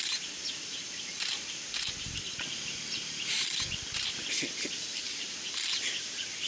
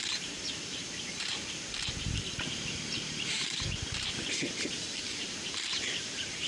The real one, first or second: first